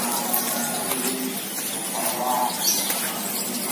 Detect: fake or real real